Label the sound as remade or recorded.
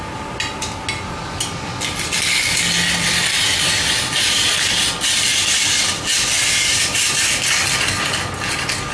recorded